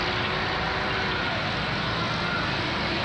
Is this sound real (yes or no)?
yes